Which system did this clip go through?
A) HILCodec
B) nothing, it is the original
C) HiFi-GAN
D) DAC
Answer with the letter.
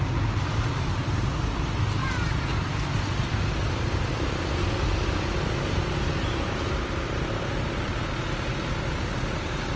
B